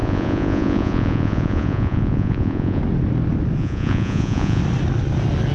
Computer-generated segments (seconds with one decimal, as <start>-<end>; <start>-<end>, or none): 0.0-2.8; 3.6-4.6